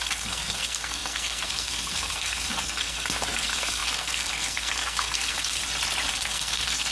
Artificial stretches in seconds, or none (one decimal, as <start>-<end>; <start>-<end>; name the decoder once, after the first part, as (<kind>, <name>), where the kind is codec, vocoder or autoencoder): 0.0-5.6 (codec, SNAC); 6.1-6.9